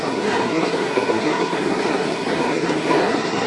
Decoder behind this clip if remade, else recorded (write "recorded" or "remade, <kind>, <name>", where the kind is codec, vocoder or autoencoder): remade, codec, SNAC